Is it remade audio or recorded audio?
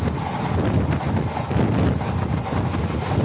recorded